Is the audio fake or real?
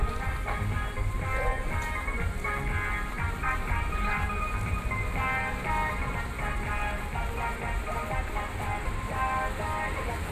real